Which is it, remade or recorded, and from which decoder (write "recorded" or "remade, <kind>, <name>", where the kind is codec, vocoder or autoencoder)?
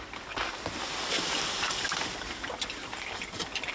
recorded